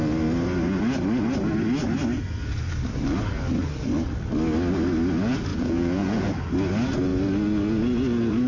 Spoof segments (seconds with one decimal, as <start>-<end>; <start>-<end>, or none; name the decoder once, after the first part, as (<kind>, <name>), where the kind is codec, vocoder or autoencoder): 5.5-6.4 (vocoder, Vocos)